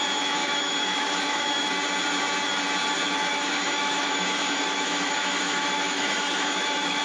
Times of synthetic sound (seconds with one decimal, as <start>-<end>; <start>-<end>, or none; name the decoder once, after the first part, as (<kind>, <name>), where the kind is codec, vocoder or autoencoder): 0.4-1.7 (autoencoder, DAC-VAE); 3.3-7.0